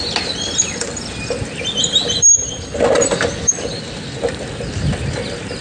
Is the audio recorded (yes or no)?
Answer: yes